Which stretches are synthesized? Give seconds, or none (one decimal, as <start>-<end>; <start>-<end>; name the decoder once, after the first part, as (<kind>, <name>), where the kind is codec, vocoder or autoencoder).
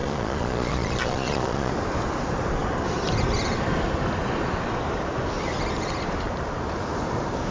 0.0-1.7 (vocoder, Vocos)